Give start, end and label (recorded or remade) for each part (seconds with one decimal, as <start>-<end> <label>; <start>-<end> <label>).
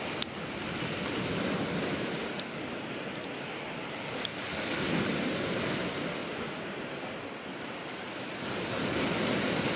0.0-9.8 recorded